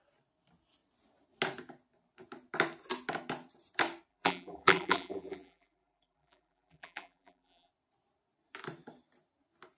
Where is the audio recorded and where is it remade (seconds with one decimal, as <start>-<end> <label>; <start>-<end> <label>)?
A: 0.0-4.1 recorded; 4.1-7.7 remade; 7.7-9.8 recorded